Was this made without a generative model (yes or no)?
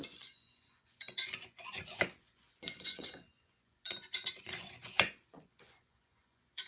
no